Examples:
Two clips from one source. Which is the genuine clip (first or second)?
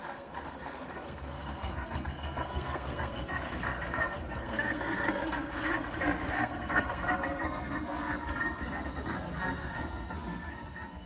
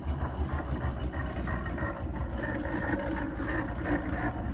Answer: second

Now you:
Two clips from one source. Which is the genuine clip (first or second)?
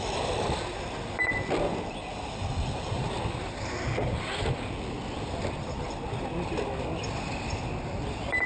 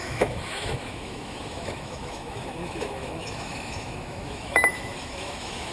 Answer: first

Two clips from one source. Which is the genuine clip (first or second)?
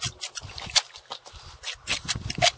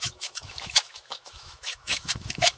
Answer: first